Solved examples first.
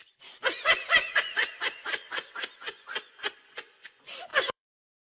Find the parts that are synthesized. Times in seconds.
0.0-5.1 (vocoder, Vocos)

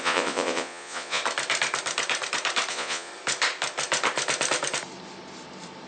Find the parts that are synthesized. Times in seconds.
0.0-1.2 (vocoder, Vocos); 2.7-3.1

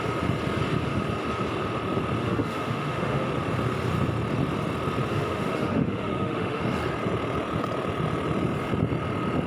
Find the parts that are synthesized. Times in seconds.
2.2-3.3 (autoencoder, DAC-VAE); 5.1-6.6